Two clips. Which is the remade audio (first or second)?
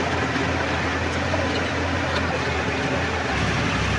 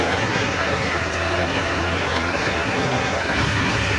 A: second